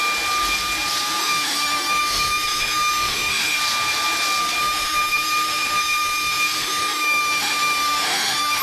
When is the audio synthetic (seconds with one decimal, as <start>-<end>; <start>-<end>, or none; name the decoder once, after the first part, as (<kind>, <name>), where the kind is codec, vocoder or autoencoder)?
1.2-3.6 (autoencoder, DAC-VAE); 4.6-8.6